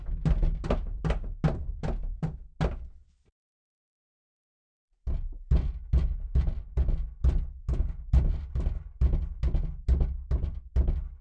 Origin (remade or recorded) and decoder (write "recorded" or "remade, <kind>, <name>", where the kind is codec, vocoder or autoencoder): recorded